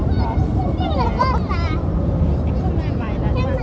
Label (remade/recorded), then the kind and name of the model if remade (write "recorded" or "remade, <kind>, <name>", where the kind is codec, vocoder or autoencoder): remade, vocoder, BigVGAN v2